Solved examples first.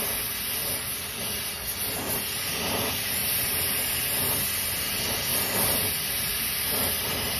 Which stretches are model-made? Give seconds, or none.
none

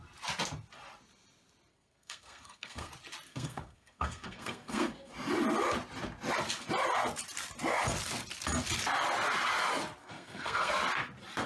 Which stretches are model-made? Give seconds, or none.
1.7-2.9 (codec, SNAC); 3.3-5.1; 10.0-10.7

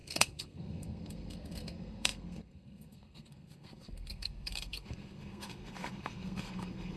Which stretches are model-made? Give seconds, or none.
0.0-7.0 (codec, SNAC)

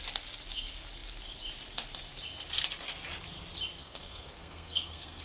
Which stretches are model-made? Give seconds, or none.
3.8-5.2 (codec, SNAC)

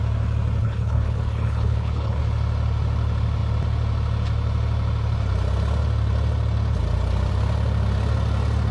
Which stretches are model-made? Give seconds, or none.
0.6-2.2 (codec, HILCodec)